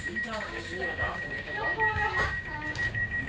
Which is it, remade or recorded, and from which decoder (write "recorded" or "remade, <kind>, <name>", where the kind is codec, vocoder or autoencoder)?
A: remade, codec, DAC